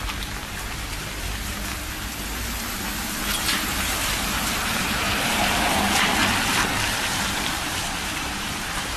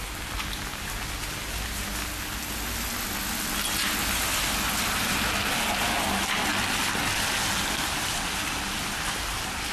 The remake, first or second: first